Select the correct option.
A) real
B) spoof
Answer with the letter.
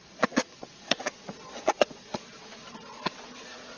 B